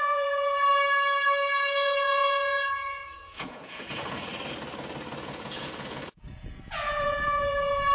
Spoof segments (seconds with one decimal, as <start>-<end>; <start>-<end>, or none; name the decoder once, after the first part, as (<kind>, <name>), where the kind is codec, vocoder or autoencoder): 0.0-4.3 (vocoder, Vocos); 5.2-7.9